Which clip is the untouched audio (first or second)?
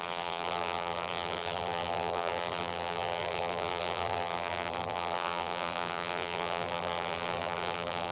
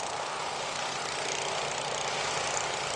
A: second